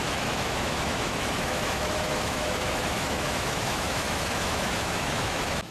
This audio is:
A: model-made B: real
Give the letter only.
A